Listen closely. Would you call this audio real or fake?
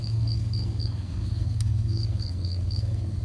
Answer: fake